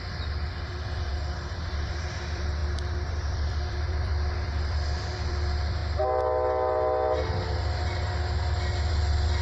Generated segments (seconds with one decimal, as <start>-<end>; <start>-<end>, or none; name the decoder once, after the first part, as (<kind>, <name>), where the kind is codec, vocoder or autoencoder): 0.0-1.1 (vocoder, BigVGAN v2); 1.6-5.8; 8.9-9.4